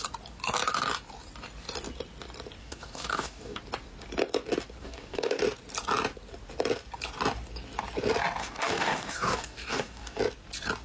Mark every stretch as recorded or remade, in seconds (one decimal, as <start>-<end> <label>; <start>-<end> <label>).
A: 0.0-2.6 recorded; 2.6-3.6 remade; 3.6-4.8 recorded; 4.8-5.4 remade; 5.4-8.4 recorded; 8.4-10.2 remade; 10.2-10.8 recorded